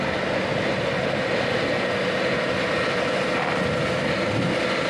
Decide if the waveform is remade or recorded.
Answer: recorded